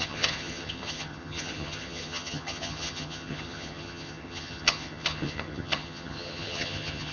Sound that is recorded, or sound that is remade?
remade